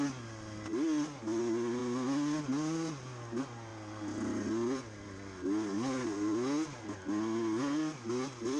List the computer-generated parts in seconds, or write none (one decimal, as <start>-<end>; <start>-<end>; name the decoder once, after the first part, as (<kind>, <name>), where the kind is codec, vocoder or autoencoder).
none